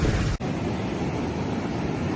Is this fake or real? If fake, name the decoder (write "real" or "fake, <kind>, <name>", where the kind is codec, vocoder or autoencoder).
real